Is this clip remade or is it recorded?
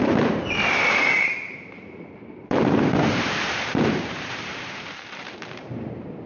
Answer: remade